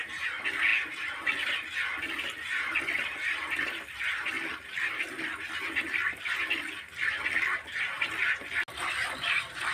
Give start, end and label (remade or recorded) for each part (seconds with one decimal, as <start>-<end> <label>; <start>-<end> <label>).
0.0-9.7 recorded

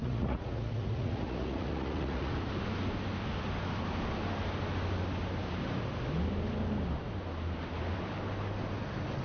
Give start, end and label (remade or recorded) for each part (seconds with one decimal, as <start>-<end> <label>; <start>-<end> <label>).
0.0-2.3 remade; 2.3-9.2 recorded

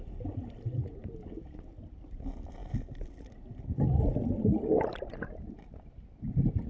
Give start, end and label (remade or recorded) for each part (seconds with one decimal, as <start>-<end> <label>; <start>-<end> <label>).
0.0-6.7 recorded

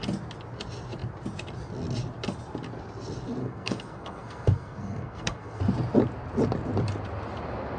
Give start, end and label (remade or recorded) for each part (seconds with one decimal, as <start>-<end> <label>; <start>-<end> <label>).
0.0-3.4 recorded; 3.4-5.6 remade; 5.6-7.8 recorded

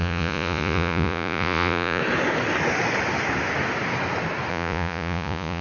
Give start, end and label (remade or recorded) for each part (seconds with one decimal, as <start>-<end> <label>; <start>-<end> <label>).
0.0-2.0 remade; 2.0-4.5 recorded; 4.5-5.6 remade

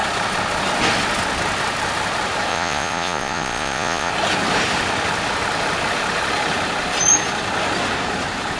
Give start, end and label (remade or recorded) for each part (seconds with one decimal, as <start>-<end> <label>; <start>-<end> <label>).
0.0-2.5 recorded; 2.5-4.1 remade; 4.1-8.6 recorded

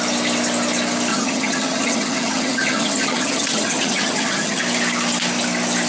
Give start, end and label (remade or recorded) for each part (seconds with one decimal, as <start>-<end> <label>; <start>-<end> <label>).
0.0-1.1 recorded; 1.1-4.6 remade; 4.6-5.9 recorded

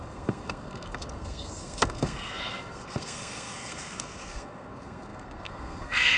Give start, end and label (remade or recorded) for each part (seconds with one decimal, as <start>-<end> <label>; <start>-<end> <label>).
0.0-6.2 remade